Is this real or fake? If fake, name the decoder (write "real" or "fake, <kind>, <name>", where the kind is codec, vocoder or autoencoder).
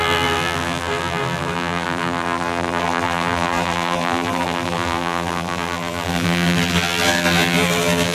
fake, vocoder, BigVGAN v2